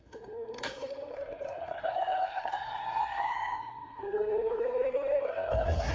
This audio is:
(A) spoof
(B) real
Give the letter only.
A